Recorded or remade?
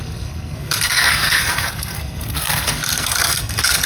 remade